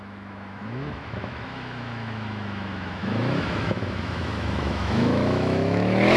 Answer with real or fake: fake